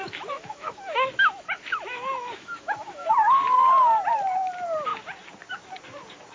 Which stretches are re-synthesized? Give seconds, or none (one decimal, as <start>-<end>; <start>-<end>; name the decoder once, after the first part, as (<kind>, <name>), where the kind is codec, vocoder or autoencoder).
0.0-3.1 (autoencoder, DAC-VAE)